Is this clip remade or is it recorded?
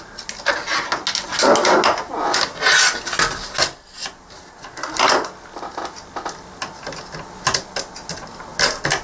recorded